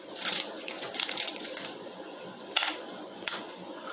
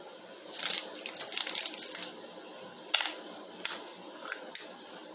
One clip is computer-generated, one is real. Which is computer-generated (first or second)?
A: first